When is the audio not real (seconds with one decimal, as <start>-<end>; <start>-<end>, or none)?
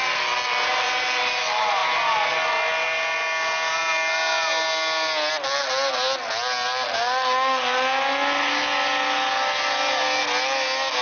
none